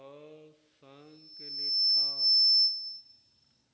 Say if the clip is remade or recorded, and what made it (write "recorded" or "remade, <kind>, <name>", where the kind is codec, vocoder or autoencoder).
recorded